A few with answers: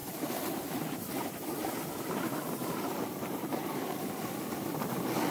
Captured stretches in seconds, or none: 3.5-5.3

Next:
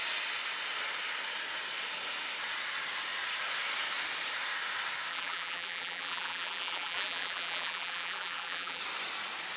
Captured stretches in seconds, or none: 0.0-5.1; 8.8-9.6

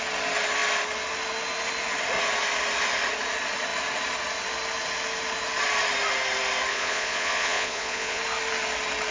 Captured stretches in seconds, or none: 0.0-6.7; 8.2-9.1

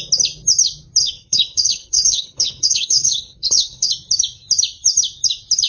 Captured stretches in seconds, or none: 0.0-1.0; 3.9-5.7